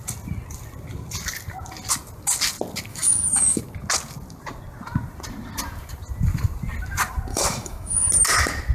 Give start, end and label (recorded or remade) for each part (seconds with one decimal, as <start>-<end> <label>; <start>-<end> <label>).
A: 0.0-2.9 recorded; 2.9-3.6 remade; 3.6-7.3 recorded; 7.3-8.1 remade; 8.1-8.7 recorded

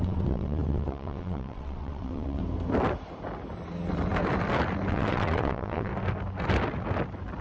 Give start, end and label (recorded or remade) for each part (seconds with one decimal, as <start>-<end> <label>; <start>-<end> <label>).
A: 0.0-2.4 remade; 2.4-4.9 recorded; 4.9-5.9 remade; 5.9-7.4 recorded